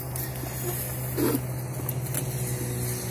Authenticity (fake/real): real